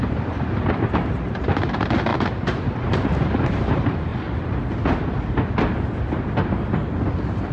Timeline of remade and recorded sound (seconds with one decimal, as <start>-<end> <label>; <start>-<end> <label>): 0.0-4.1 remade; 4.1-7.5 recorded